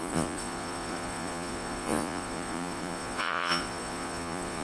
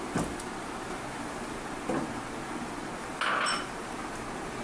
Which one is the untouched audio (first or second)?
second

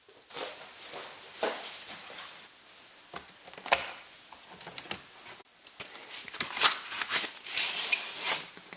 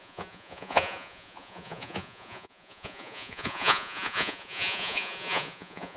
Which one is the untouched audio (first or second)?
first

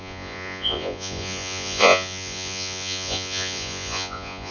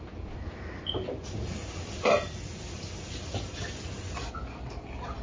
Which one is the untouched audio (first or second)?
second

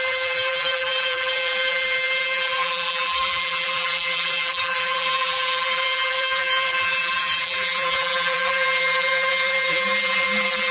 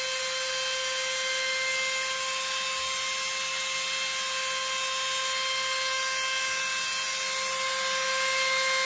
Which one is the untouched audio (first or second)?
second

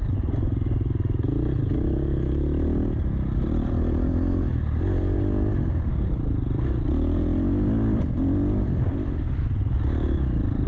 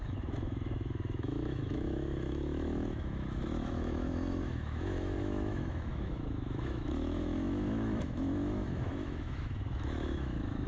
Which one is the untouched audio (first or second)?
first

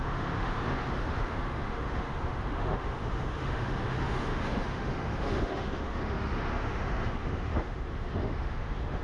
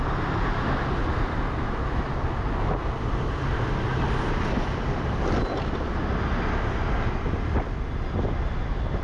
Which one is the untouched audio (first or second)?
second